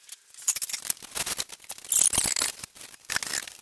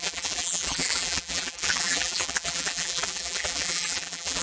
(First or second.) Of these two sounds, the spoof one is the second